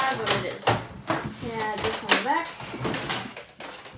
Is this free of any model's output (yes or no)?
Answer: yes